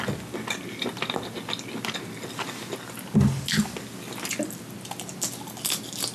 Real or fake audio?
real